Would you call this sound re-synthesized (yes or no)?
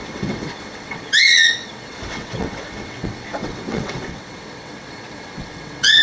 yes